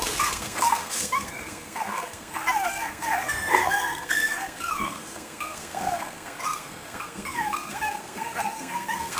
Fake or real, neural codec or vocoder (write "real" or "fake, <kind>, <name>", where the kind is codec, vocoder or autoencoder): fake, codec, SNAC